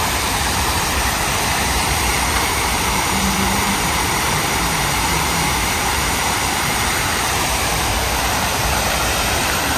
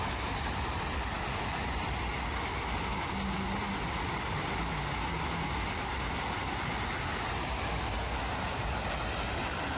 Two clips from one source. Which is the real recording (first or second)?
second